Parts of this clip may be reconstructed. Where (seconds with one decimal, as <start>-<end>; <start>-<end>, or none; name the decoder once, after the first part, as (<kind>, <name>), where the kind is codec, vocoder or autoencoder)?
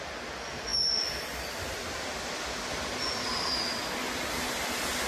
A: none